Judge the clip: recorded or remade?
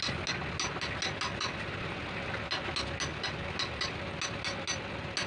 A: recorded